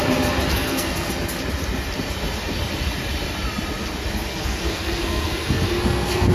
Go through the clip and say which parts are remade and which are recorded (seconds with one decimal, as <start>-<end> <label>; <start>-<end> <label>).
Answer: 0.0-0.5 recorded; 0.5-1.1 remade; 1.1-4.3 recorded; 4.3-6.3 remade